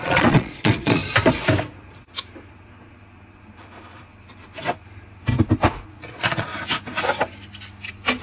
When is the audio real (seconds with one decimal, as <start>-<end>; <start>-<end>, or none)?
1.0-5.9; 6.5-8.2